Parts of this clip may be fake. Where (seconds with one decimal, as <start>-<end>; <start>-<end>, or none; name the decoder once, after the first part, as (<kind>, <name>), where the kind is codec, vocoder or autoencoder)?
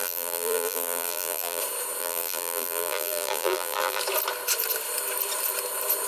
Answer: 0.0-1.6 (vocoder, BigVGAN v2); 2.0-4.0